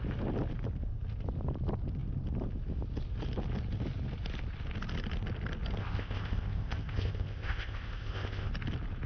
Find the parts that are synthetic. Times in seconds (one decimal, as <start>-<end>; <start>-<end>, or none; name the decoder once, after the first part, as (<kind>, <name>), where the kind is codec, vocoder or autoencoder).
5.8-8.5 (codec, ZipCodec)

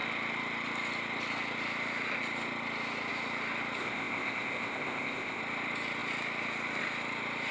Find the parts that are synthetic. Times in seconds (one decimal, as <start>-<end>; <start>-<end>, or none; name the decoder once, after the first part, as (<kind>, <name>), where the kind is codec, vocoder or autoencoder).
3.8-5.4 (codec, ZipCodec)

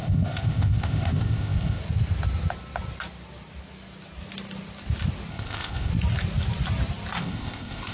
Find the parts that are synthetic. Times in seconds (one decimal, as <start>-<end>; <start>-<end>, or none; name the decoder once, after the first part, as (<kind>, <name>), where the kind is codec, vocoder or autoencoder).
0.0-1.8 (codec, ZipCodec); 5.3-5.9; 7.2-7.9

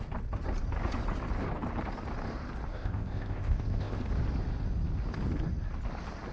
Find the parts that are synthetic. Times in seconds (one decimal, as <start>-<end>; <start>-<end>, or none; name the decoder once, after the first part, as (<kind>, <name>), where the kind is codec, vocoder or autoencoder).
2.7-4.1 (codec, ZipCodec)